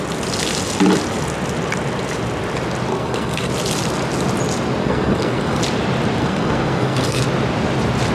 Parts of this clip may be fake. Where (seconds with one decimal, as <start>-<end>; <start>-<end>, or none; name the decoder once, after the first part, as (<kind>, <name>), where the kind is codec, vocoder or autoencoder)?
2.9-3.5 (codec, SNAC); 4.8-5.6; 6.2-7.2